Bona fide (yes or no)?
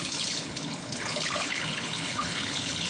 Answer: no